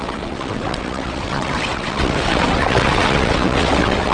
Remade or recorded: remade